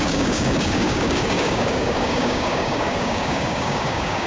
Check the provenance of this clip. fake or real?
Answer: fake